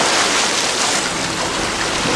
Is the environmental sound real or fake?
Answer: real